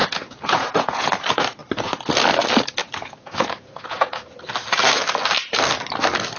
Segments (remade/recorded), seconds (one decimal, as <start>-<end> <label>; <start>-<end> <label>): 0.0-1.1 remade; 1.1-2.8 recorded; 2.8-4.4 remade; 4.4-6.4 recorded